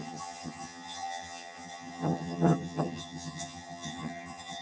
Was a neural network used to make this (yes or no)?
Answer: yes